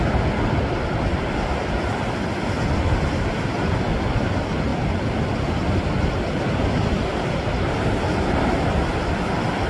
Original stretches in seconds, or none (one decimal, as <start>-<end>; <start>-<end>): 0.0-9.7